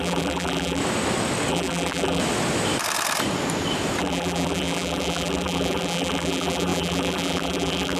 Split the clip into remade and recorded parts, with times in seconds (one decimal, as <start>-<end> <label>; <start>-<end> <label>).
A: 0.0-0.8 remade; 0.8-1.5 recorded; 1.5-2.2 remade; 2.2-4.0 recorded; 4.0-8.0 remade